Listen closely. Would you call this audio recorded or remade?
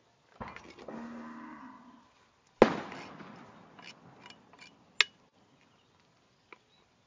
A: recorded